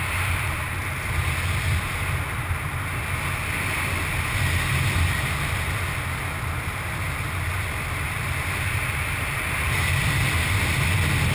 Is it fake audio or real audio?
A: real